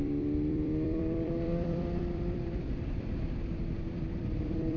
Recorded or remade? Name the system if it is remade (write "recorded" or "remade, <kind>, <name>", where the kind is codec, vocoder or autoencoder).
remade, vocoder, BigVGAN v2